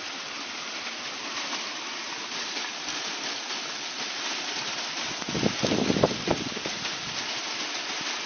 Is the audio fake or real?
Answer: real